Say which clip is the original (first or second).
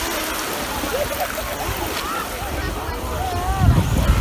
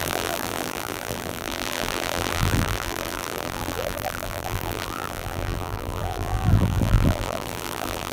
first